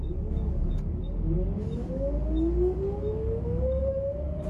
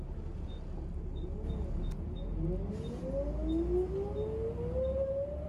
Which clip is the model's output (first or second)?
first